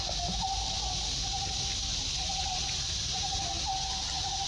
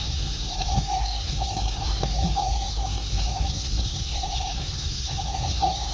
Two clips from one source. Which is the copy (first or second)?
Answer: second